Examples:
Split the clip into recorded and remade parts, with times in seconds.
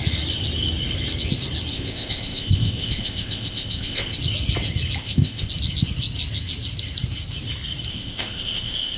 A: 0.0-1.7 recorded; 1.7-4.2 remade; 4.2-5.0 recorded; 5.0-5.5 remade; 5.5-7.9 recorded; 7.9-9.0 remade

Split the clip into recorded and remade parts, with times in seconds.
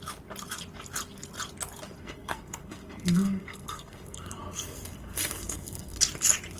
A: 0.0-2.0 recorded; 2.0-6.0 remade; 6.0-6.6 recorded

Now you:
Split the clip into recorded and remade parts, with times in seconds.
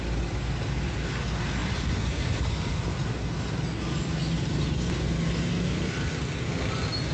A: 0.0-7.1 recorded